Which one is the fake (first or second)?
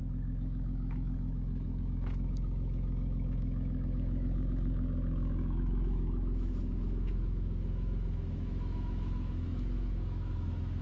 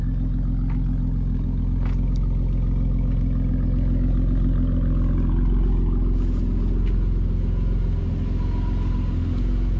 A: first